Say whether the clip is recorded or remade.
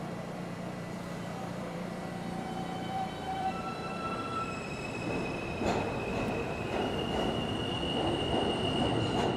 remade